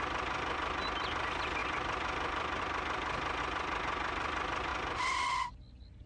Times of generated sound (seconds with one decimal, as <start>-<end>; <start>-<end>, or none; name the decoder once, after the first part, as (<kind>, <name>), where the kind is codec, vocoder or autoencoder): none